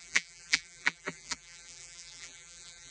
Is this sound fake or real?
fake